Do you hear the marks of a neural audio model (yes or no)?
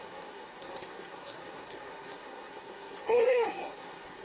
yes